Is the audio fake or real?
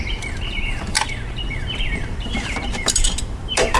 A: fake